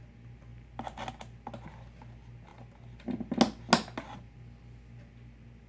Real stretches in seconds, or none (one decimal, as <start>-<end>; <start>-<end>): 0.0-5.7